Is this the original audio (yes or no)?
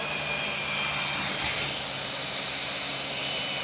yes